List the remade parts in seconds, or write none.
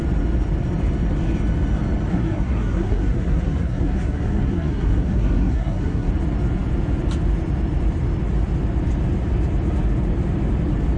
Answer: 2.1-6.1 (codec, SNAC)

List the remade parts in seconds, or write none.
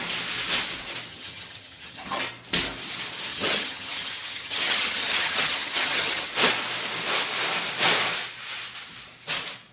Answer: 1.1-2.2 (vocoder, HiFi-GAN); 3.3-6.3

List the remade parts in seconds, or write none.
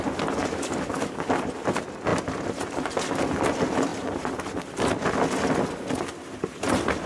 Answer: 0.4-1.3 (codec, DAC)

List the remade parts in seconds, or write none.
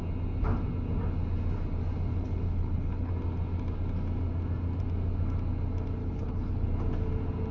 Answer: 2.1-3.1 (codec, HILCodec); 6.0-6.7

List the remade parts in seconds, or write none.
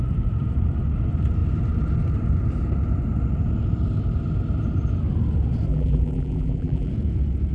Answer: 5.7-6.9 (vocoder, BigVGAN v2)